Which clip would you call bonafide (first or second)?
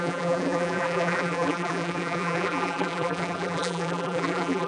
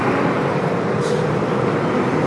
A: second